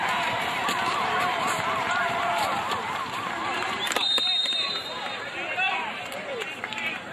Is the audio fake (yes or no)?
yes